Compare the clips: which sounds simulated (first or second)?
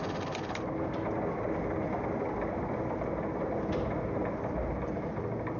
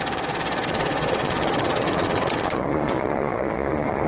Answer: second